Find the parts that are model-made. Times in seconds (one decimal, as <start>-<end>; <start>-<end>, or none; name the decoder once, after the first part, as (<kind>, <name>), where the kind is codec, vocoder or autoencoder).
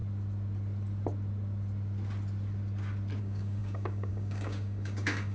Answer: 3.2-5.3 (codec, DAC)